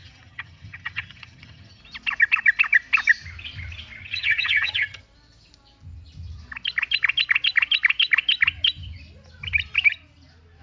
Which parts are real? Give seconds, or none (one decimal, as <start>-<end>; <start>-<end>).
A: 1.8-4.0; 5.0-10.6